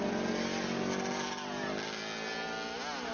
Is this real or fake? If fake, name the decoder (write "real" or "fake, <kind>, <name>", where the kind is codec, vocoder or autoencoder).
real